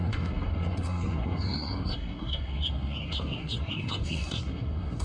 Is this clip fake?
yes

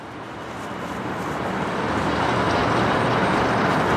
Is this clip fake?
no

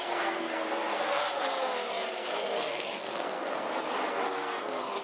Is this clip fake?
yes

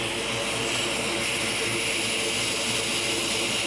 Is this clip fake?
no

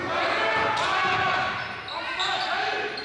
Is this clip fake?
no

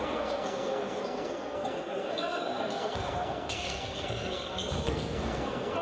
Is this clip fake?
yes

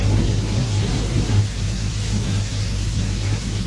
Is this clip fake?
yes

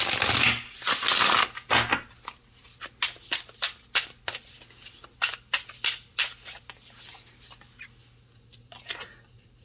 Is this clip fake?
no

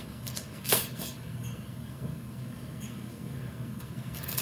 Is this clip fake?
yes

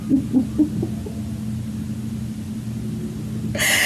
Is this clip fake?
no